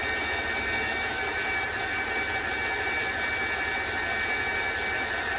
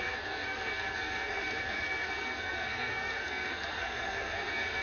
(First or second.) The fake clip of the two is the second